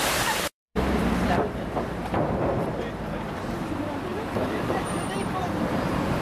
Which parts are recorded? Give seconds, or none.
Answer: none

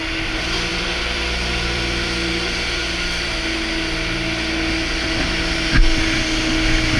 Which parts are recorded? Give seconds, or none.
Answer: 0.0-0.7; 2.3-7.0

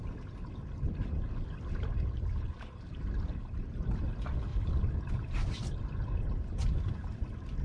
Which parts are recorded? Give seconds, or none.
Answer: 0.0-4.5